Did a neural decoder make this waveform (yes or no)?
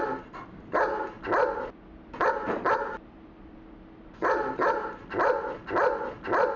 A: no